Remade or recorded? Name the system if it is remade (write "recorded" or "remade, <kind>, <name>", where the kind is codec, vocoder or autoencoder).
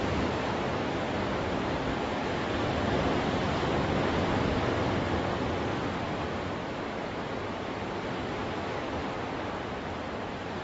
recorded